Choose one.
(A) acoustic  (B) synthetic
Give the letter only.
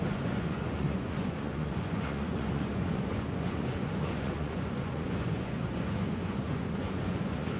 B